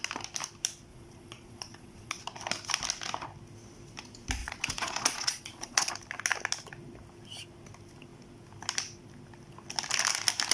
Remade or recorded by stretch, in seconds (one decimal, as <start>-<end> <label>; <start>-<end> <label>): 0.0-0.9 recorded; 0.9-2.2 remade; 2.2-4.4 recorded; 4.4-5.9 remade; 5.9-10.5 recorded